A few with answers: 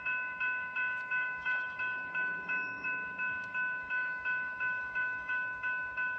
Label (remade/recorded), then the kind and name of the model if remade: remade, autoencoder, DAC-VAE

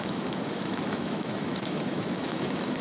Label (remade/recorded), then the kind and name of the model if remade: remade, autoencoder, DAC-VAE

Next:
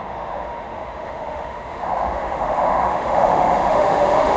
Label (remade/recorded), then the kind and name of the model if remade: remade, autoencoder, DAC-VAE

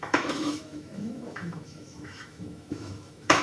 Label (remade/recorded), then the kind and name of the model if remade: remade, autoencoder, DAC-VAE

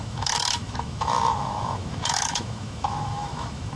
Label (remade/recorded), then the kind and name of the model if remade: remade, autoencoder, DAC-VAE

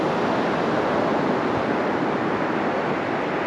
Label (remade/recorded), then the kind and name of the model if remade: recorded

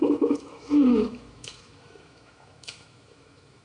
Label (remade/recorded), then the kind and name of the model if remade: remade, autoencoder, DAC-VAE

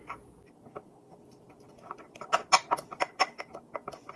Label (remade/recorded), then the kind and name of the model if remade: recorded